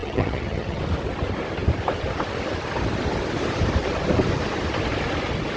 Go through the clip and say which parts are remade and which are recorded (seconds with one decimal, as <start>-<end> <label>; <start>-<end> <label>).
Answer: 0.0-0.8 remade; 0.8-5.6 recorded